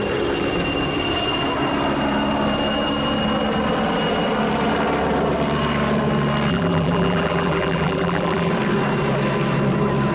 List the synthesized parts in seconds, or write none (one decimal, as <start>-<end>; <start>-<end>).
6.5-8.5